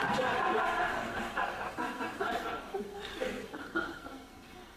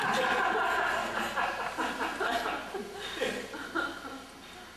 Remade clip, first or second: first